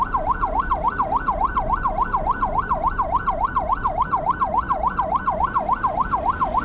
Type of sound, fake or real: real